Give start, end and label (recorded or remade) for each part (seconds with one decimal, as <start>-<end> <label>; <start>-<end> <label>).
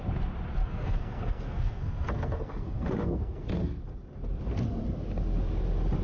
0.0-0.6 recorded; 0.6-3.5 remade; 3.5-6.0 recorded